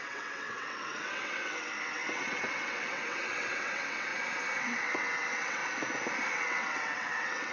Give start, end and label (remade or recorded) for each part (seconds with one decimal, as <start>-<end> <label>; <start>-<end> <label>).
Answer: 0.0-4.1 remade; 4.1-4.6 recorded; 4.6-5.6 remade; 5.6-6.3 recorded; 6.3-7.5 remade